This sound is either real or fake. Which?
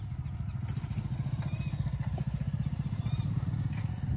real